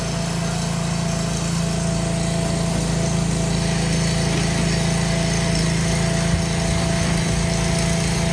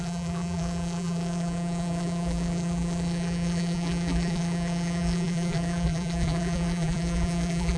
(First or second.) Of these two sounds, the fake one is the second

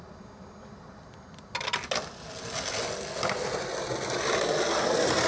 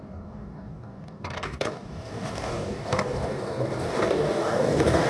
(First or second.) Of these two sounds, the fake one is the second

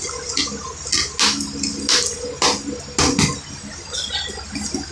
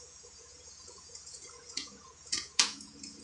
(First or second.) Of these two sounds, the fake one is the second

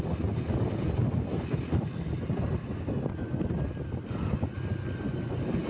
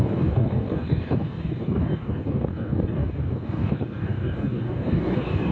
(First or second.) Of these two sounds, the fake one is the second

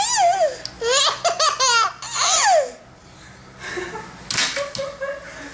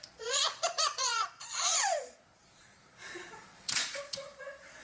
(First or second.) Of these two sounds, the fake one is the second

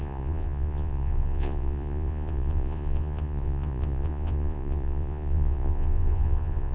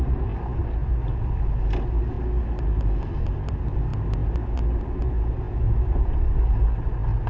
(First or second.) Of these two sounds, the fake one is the first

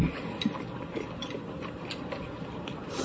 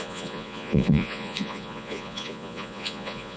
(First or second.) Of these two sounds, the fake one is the second